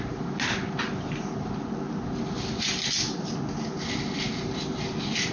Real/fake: real